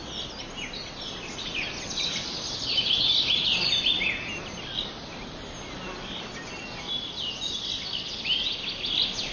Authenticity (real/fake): real